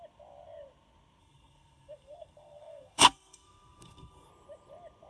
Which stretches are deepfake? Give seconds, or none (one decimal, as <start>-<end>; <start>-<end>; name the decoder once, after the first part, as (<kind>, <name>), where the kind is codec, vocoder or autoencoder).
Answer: 1.2-4.3 (codec, SNAC)